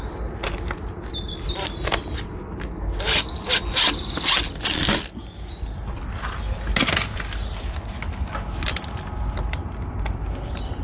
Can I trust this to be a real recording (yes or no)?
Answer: yes